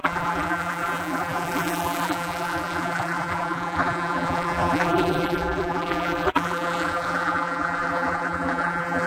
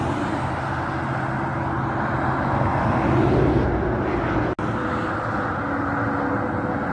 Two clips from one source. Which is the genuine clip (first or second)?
second